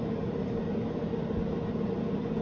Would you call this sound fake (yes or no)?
no